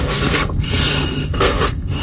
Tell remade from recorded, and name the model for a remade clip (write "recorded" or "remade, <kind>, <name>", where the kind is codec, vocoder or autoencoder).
remade, codec, SNAC